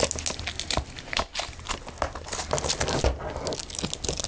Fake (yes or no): no